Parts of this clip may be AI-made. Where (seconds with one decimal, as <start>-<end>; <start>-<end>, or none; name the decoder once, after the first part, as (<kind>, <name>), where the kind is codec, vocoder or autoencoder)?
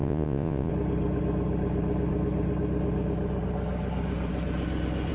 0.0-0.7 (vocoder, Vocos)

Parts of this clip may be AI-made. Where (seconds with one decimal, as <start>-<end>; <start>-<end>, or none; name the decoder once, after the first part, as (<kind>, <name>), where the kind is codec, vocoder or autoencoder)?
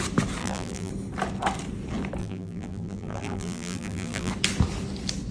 0.4-0.9 (vocoder, BigVGAN v2); 2.2-4.3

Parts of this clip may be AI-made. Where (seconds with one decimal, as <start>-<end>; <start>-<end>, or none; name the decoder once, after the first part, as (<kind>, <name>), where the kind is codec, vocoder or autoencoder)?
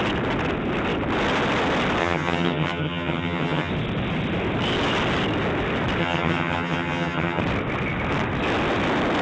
2.0-3.7 (vocoder, HiFi-GAN); 6.0-7.4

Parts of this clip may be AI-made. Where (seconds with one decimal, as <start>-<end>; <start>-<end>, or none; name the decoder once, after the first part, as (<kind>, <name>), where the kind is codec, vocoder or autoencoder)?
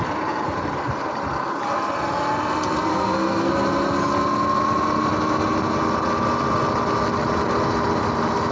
2.9-3.5 (codec, SNAC)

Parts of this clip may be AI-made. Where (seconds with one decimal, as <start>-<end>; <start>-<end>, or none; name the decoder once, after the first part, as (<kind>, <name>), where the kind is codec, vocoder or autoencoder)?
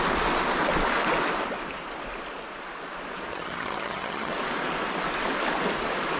3.3-4.3 (vocoder, HiFi-GAN)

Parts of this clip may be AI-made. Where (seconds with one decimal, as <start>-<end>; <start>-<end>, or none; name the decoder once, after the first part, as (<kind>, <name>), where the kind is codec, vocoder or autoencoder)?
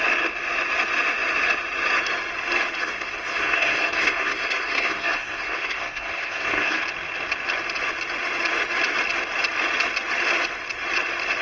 2.8-6.8 (codec, SNAC)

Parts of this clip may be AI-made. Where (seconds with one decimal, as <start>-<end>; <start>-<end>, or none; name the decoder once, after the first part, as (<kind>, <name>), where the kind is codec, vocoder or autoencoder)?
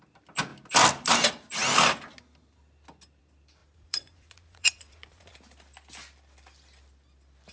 3.6-5.3 (vocoder, Vocos)